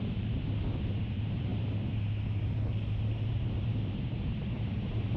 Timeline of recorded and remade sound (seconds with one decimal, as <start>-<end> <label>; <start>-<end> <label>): 0.0-1.5 remade; 1.5-3.3 recorded; 3.3-5.2 remade